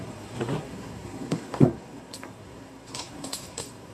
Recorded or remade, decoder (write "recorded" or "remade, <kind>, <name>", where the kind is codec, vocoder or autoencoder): remade, codec, SNAC